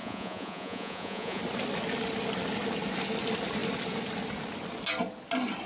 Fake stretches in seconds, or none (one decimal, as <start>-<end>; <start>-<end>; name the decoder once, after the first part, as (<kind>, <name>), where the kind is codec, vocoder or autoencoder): 0.0-1.4 (vocoder, Vocos)